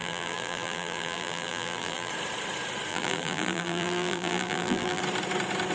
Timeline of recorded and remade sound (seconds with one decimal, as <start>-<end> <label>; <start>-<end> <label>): 0.0-2.1 remade; 2.1-2.9 recorded; 2.9-5.0 remade; 5.0-5.7 recorded